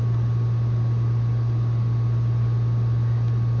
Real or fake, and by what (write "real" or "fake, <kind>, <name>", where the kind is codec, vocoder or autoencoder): real